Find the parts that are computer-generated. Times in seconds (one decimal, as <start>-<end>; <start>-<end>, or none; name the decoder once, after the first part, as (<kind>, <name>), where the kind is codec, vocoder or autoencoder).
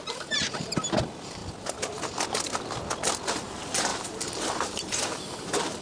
3.9-5.1 (vocoder, BigVGAN v2)